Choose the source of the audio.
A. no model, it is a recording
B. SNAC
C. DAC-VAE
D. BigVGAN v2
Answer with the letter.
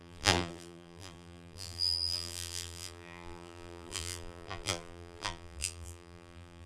D